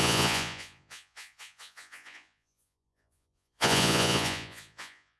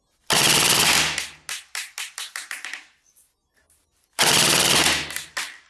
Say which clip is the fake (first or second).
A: first